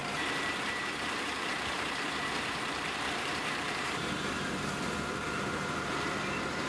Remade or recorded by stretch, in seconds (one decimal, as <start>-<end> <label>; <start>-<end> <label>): 0.0-6.7 remade